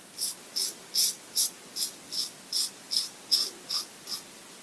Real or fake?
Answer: real